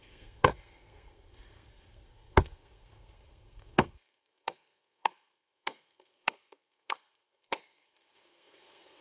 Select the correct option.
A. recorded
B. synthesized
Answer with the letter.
B